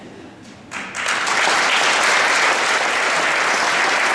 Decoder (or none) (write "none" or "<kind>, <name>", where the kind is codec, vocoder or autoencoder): none